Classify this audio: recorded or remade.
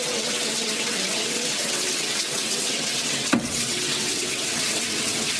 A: remade